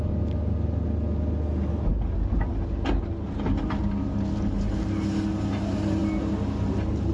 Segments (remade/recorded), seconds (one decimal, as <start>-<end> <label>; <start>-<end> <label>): 0.0-7.1 recorded